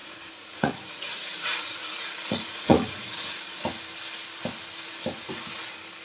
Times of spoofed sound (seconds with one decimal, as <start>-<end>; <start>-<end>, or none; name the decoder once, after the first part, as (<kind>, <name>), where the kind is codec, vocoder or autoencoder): 0.0-3.6 (vocoder, Vocos)